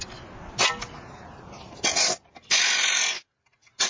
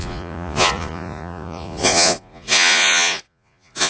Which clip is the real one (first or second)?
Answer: first